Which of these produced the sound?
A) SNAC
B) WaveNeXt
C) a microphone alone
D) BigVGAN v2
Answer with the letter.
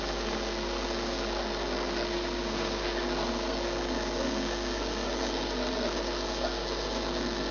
A